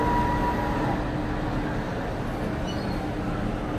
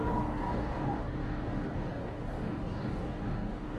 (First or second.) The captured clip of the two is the first